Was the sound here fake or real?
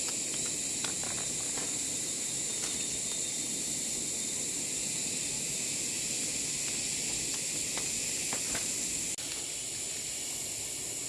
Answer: real